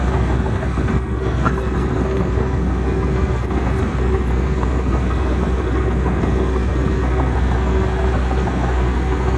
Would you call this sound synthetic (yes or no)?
yes